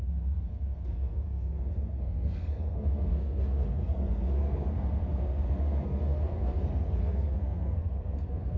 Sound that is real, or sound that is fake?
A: fake